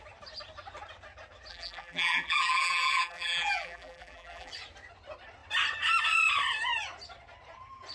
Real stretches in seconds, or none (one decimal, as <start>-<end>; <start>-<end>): 0.0-1.5; 4.5-7.9